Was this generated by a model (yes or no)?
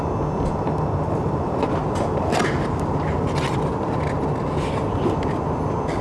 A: no